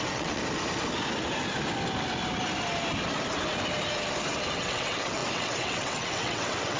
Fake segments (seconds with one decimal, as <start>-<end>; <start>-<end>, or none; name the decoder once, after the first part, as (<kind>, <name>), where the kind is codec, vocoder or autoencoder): 0.0-0.4 (vocoder, WaveNeXt); 4.5-6.8